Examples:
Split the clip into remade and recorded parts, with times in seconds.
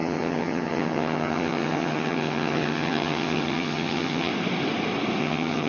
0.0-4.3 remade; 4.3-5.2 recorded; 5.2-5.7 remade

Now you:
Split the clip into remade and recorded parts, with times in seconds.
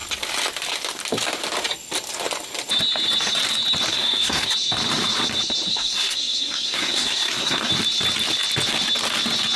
0.0-3.9 recorded; 3.9-4.5 remade; 4.5-5.7 recorded; 5.7-7.7 remade; 7.7-9.6 recorded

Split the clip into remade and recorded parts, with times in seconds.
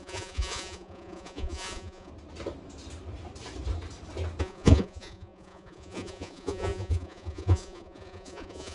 0.0-2.1 remade; 2.1-4.4 recorded; 4.4-8.7 remade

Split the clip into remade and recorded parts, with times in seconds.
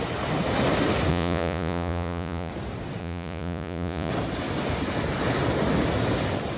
0.0-1.1 recorded; 1.1-2.5 remade; 2.5-3.0 recorded; 3.0-4.1 remade; 4.1-6.6 recorded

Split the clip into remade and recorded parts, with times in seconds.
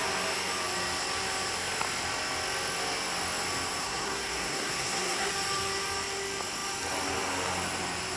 0.0-3.8 recorded; 3.8-5.3 remade; 5.3-8.2 recorded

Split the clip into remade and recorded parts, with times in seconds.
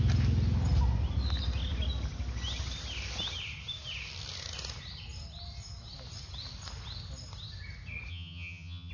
0.0-8.1 recorded; 8.1-8.9 remade